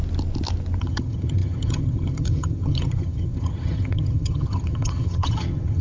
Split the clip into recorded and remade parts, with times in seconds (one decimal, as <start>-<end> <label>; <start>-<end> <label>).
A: 0.0-0.8 recorded; 0.8-5.8 remade